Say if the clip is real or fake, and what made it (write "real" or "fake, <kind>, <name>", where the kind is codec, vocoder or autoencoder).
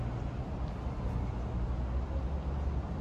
real